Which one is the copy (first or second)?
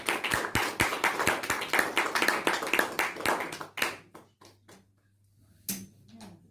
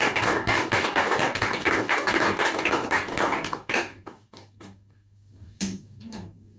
second